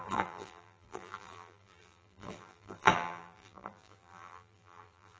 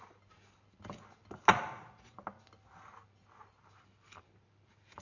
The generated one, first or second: first